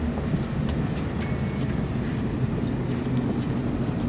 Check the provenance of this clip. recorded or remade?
recorded